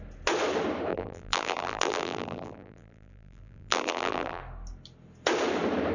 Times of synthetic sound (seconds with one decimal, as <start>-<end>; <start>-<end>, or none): 0.9-4.4